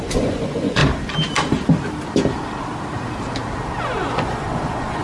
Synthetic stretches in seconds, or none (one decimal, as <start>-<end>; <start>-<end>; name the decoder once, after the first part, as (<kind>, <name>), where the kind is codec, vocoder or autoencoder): 0.0-0.8 (vocoder, Vocos); 3.8-5.0